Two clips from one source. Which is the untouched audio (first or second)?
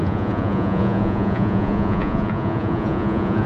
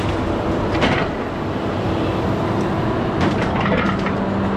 second